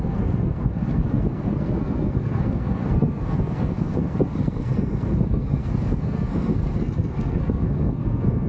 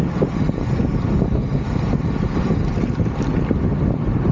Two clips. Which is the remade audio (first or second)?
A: first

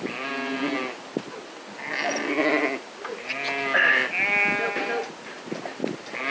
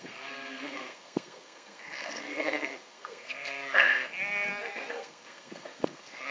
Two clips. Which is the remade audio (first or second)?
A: second